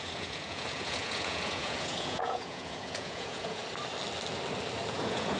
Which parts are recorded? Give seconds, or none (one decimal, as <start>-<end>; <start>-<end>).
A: 3.6-4.9